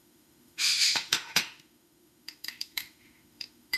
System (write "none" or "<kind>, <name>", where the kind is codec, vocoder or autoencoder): autoencoder, DAC-VAE